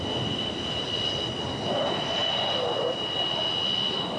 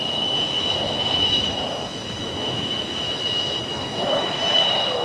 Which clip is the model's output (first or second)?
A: second